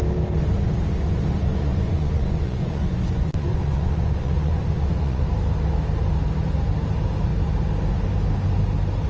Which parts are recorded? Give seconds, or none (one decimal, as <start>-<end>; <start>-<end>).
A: 0.0-1.5; 5.2-9.1